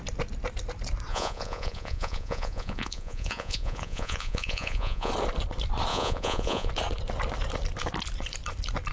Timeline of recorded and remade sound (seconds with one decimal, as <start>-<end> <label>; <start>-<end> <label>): 0.0-1.1 recorded; 1.1-5.1 remade; 5.1-5.9 recorded; 5.9-6.7 remade; 6.7-8.9 recorded